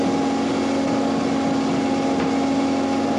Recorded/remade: recorded